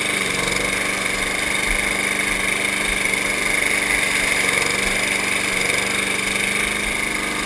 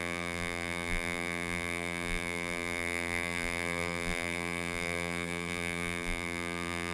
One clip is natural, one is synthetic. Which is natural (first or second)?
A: first